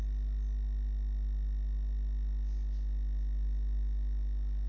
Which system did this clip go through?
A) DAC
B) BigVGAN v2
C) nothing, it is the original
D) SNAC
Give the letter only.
C